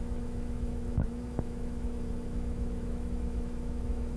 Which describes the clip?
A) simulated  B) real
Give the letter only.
A